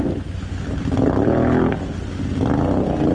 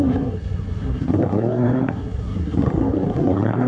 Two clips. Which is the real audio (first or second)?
first